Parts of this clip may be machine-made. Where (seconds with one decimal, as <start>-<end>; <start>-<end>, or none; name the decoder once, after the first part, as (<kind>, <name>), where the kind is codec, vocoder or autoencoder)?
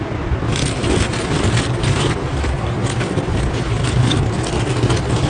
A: none